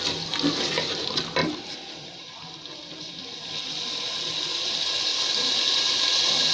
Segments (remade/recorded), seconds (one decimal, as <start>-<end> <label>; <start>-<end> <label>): 0.0-1.4 recorded; 1.4-3.5 remade; 3.5-5.1 recorded; 5.1-6.5 remade